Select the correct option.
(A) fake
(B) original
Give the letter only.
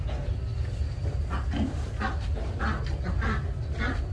B